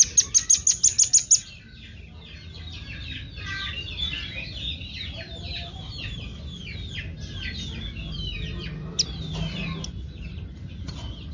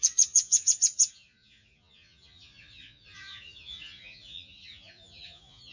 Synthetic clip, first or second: second